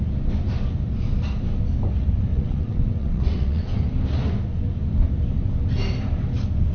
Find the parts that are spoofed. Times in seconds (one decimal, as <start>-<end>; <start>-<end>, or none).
2.3-3.8